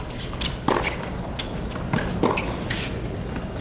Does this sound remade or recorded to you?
recorded